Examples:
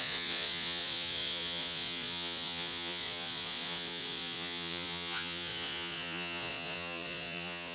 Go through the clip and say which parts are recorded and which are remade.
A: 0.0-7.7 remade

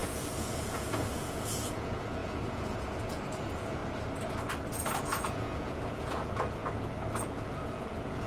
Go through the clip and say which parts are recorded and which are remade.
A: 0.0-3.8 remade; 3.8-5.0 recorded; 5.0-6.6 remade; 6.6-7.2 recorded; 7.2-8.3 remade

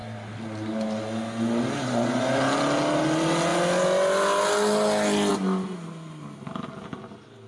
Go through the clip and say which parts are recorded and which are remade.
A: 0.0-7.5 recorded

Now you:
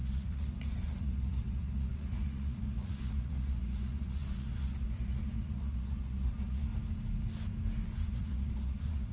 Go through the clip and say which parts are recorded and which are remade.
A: 0.0-6.7 remade; 6.7-8.1 recorded; 8.1-9.1 remade

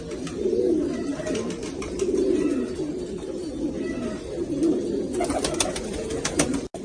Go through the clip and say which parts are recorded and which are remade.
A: 0.0-6.8 recorded